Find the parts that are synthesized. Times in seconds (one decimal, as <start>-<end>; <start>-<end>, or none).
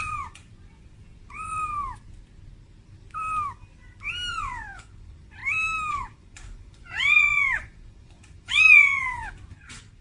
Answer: 0.0-1.6; 4.3-5.4; 5.9-10.0